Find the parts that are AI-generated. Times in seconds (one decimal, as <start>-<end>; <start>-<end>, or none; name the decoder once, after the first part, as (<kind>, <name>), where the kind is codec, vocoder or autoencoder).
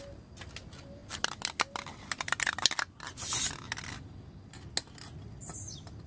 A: none